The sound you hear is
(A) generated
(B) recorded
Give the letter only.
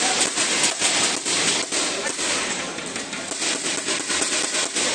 B